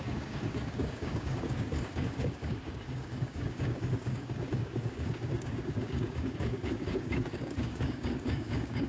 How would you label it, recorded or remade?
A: remade